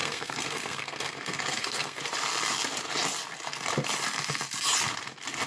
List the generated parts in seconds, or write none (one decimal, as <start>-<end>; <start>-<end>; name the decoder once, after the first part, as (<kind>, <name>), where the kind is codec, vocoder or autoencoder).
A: 0.0-2.0 (codec, SNAC)